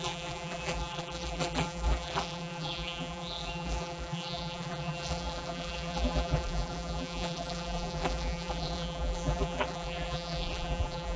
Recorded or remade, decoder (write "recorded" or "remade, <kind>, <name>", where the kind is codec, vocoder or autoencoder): remade, vocoder, BigVGAN v2